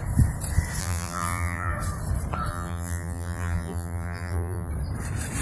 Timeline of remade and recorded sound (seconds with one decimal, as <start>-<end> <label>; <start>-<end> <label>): 0.0-0.8 recorded; 0.8-1.7 remade; 1.7-2.5 recorded; 2.5-4.7 remade; 4.7-5.4 recorded